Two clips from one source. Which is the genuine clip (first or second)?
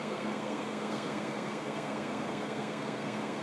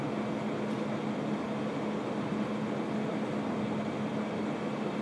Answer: second